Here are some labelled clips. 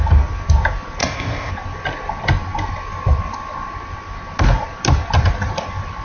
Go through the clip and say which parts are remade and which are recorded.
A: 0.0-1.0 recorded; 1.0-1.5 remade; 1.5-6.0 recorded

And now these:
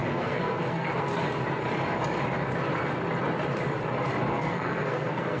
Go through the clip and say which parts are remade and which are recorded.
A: 0.0-1.1 remade; 1.1-4.3 recorded; 4.3-5.4 remade

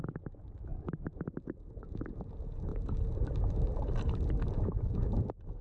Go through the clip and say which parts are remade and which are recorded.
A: 0.0-0.7 recorded; 0.7-1.8 remade; 1.8-2.7 recorded; 2.7-5.6 remade